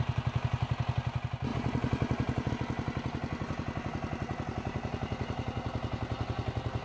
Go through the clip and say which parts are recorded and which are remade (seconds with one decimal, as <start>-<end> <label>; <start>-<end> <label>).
0.0-1.5 recorded; 1.5-2.5 remade; 2.5-6.8 recorded